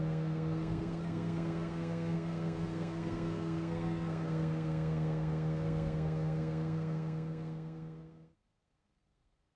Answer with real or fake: fake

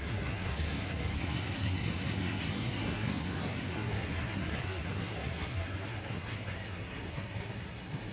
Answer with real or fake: fake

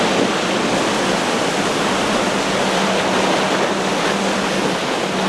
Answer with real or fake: real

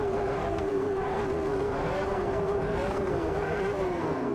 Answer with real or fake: fake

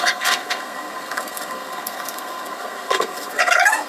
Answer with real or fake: fake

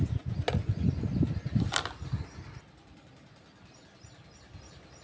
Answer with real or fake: real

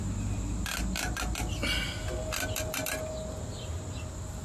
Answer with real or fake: real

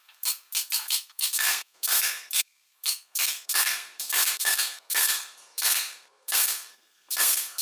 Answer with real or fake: fake